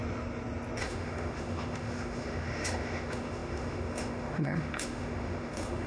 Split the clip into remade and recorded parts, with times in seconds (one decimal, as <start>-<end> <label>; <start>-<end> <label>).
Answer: 0.0-0.8 recorded; 0.8-5.9 remade